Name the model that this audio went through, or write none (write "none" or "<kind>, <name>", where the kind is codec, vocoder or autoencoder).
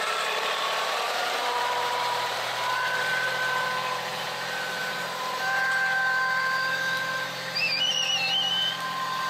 vocoder, BigVGAN v2